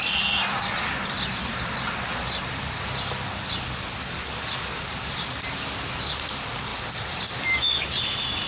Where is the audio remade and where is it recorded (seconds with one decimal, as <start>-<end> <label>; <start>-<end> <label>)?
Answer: 0.0-8.5 recorded